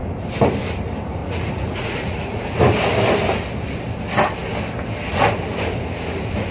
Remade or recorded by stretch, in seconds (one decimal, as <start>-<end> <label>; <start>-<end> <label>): 0.0-1.2 recorded; 1.2-2.5 remade; 2.5-6.5 recorded